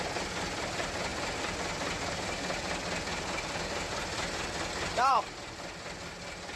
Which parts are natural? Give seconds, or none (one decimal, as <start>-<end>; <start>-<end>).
0.0-6.6